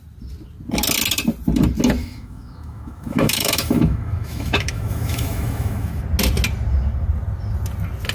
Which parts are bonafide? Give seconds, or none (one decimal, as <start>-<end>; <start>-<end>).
0.0-2.0; 6.0-8.1